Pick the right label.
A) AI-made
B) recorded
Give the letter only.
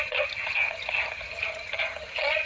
A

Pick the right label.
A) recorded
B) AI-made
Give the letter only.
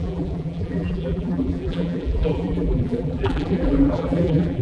B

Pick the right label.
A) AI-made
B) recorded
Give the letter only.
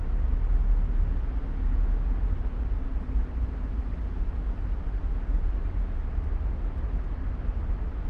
B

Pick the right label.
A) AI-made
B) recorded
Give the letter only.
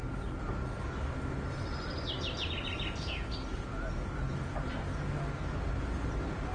B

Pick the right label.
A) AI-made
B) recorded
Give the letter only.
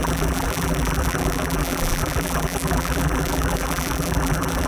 A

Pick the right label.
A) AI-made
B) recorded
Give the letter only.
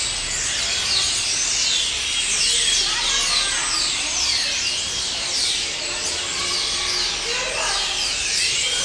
B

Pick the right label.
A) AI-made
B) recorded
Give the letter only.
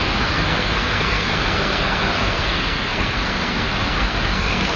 A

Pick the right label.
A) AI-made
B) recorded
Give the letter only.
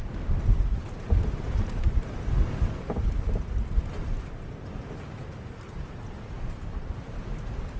B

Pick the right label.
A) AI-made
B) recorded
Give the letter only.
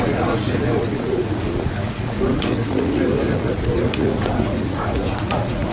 A